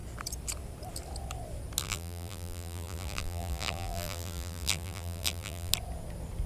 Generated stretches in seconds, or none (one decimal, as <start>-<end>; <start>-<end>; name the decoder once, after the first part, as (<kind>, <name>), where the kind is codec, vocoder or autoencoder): 1.8-5.7 (vocoder, BigVGAN v2)